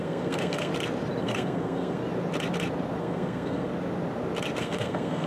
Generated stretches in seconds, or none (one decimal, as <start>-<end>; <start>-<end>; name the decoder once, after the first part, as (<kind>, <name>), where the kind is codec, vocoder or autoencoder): 0.0-0.7 (codec, SNAC); 1.2-2.0; 3.0-3.7; 4.6-5.3